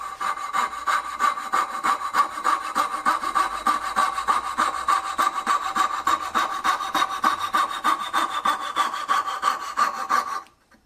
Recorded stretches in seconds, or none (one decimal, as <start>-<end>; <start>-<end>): 0.0-10.9